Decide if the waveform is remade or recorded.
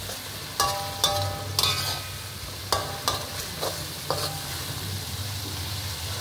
recorded